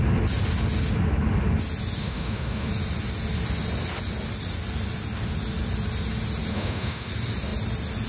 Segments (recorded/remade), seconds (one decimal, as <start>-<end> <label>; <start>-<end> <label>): 0.0-2.0 recorded; 2.0-2.7 remade; 2.7-6.5 recorded; 6.5-7.1 remade; 7.1-8.1 recorded